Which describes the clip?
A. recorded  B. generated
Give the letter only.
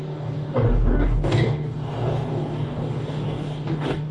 B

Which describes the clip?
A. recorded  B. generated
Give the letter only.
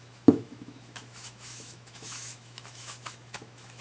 B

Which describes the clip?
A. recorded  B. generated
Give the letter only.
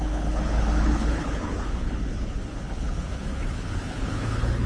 B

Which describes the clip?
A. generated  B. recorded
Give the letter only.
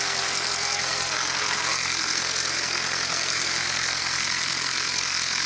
A